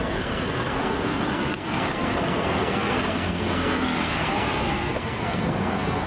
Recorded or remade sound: remade